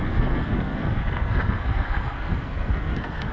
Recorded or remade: remade